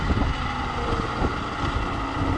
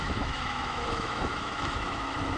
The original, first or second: first